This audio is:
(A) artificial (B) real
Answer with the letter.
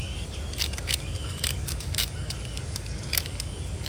A